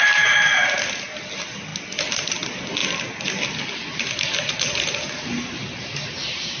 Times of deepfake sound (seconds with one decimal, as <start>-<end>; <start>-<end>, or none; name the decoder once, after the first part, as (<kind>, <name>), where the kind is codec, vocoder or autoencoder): none